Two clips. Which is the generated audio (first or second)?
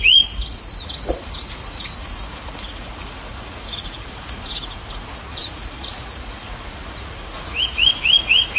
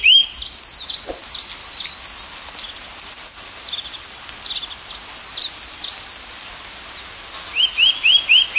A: first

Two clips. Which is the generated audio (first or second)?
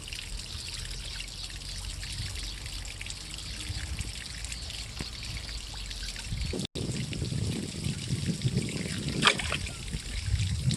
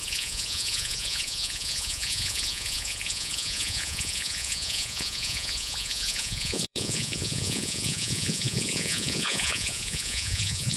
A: second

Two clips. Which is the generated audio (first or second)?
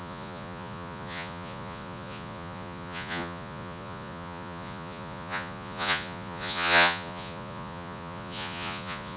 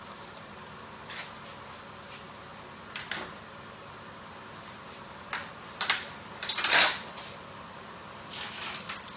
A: first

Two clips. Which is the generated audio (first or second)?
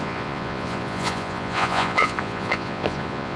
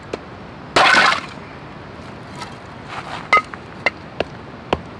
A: first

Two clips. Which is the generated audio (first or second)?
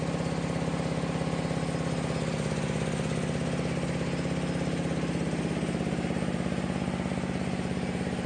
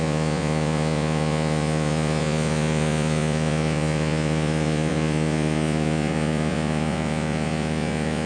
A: second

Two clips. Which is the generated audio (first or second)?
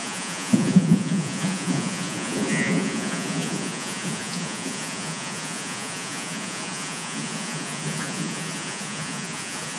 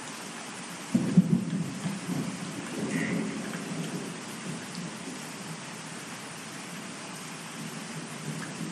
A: first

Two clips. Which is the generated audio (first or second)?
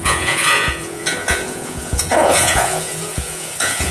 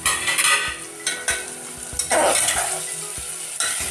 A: first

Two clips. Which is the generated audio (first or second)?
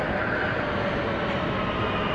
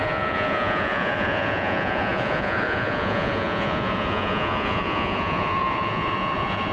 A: second